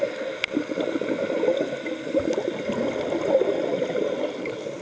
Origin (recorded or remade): recorded